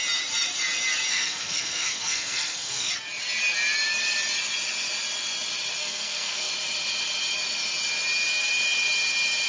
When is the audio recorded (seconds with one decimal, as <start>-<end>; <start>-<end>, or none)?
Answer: 0.0-1.1; 2.9-5.8; 6.5-9.5